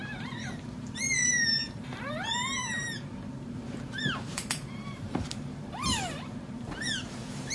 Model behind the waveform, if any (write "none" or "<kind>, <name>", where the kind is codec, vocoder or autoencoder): vocoder, BigVGAN v2